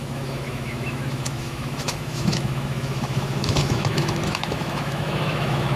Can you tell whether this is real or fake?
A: fake